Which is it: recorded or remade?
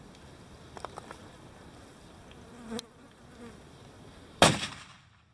recorded